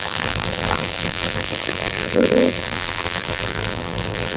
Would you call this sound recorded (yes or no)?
no